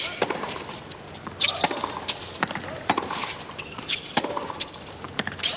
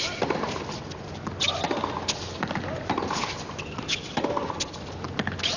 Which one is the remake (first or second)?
first